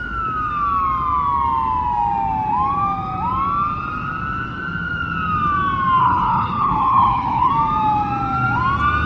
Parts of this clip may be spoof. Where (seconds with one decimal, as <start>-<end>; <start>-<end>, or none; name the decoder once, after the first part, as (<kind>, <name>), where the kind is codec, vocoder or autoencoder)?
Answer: 6.0-7.5 (codec, HILCodec)